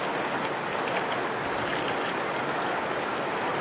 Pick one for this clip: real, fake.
real